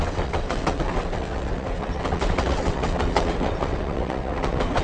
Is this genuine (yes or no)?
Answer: no